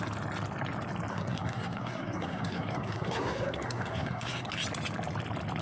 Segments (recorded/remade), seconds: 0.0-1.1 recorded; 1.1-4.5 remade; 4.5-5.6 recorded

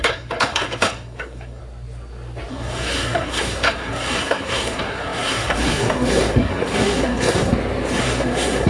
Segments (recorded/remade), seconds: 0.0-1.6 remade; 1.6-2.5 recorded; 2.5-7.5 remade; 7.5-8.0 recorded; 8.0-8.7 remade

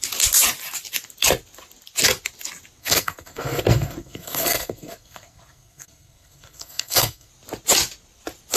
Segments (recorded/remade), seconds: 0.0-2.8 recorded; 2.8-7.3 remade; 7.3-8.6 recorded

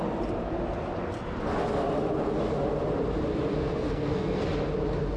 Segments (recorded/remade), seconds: 0.0-3.5 recorded; 3.5-4.4 remade; 4.4-5.2 recorded

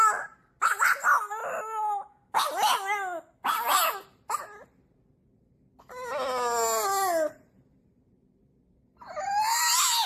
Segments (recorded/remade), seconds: 0.0-10.1 recorded